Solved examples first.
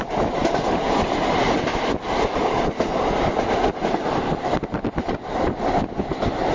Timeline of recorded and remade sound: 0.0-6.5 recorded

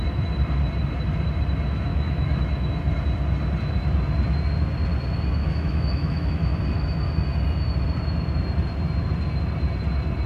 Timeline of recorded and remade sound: 0.0-1.9 recorded; 1.9-2.4 remade; 2.4-5.4 recorded; 5.4-6.6 remade; 6.6-10.3 recorded

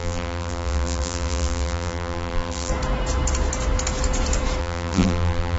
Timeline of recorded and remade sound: 0.0-2.7 remade; 2.7-4.6 recorded; 4.6-5.6 remade

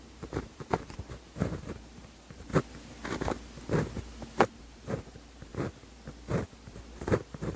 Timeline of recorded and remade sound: 0.0-2.5 remade; 2.5-4.4 recorded; 4.4-5.5 remade; 5.5-7.0 recorded; 7.0-7.6 remade